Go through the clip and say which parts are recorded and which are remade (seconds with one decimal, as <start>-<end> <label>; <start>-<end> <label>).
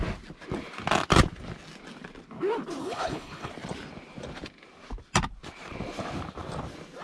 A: 0.0-2.8 recorded; 2.8-3.5 remade; 3.5-7.0 recorded